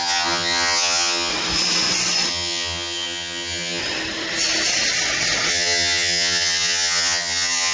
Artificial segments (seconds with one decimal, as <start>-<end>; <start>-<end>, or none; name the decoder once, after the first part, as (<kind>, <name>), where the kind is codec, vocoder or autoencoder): 0.0-1.3 (vocoder, HiFi-GAN); 2.3-3.8; 5.5-7.7